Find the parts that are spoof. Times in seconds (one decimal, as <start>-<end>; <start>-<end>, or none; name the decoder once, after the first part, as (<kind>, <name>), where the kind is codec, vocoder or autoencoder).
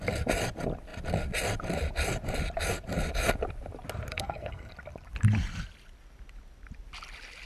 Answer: 4.1-4.7 (codec, SNAC)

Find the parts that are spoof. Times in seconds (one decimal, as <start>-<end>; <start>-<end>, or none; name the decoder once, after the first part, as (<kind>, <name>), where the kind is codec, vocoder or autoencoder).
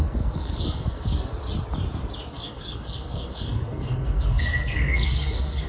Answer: 0.0-1.3 (codec, SNAC); 2.3-5.7